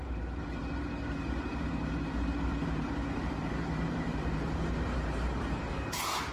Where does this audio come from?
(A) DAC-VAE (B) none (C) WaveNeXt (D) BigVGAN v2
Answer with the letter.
D